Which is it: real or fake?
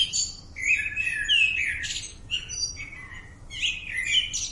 real